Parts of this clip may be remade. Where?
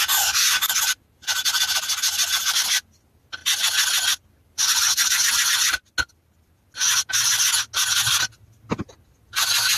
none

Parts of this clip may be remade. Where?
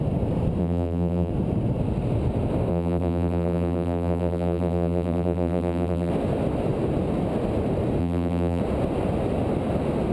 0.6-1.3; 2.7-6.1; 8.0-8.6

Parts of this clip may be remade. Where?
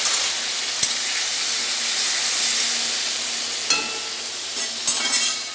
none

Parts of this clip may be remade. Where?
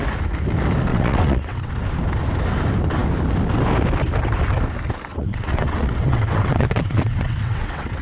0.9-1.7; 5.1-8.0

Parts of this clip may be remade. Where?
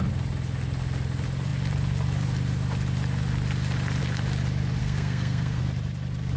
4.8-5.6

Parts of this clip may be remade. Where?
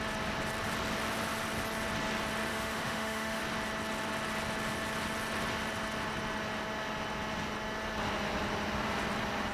2.5-3.4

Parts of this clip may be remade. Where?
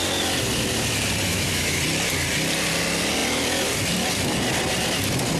1.3-1.8